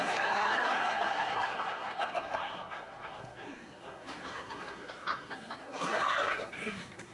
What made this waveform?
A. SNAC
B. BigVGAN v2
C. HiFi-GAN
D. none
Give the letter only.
A